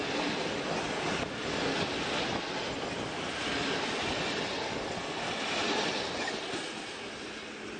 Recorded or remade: recorded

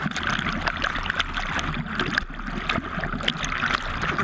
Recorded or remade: recorded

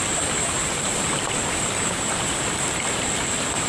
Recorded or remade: remade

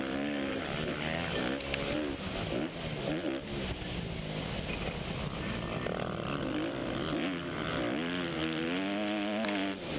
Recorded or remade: recorded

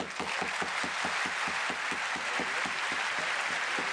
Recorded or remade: recorded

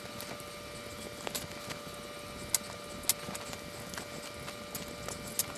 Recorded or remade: recorded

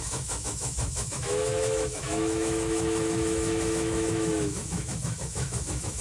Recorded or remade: remade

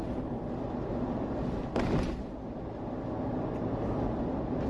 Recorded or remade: recorded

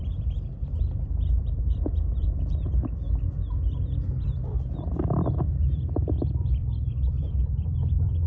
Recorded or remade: remade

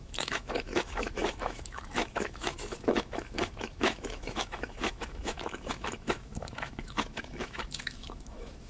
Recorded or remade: remade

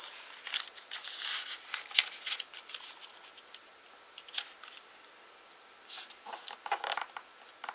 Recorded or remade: recorded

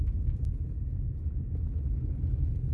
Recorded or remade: recorded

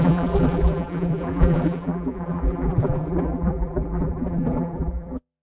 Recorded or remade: remade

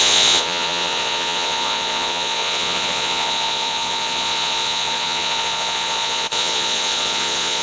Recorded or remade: remade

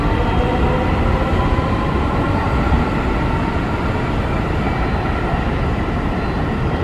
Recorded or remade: recorded